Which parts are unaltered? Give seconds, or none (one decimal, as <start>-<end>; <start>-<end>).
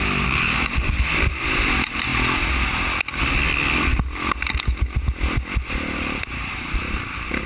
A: 2.1-5.7